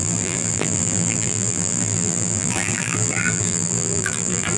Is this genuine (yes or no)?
no